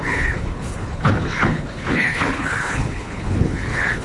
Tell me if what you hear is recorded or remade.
remade